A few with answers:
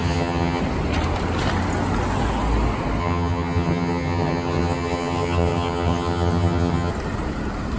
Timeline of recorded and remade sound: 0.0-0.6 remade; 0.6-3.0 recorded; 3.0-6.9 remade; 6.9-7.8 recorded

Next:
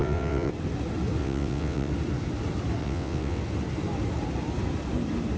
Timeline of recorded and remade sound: 0.0-0.5 remade; 0.5-1.2 recorded; 1.2-1.9 remade; 1.9-2.8 recorded; 2.8-3.4 remade; 3.4-5.4 recorded

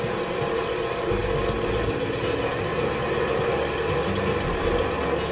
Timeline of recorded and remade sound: 0.0-5.3 recorded

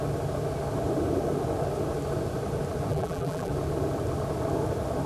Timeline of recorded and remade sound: 0.0-2.9 recorded; 2.9-3.5 remade; 3.5-5.1 recorded

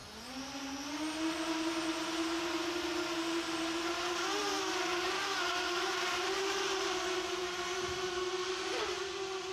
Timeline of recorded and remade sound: 0.0-9.5 recorded

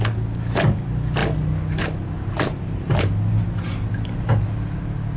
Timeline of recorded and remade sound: 0.0-5.2 recorded

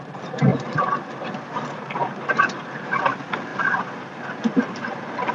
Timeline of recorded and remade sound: 0.0-0.5 recorded; 0.5-3.0 remade; 3.0-3.5 recorded; 3.5-5.3 remade